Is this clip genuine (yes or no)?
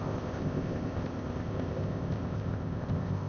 no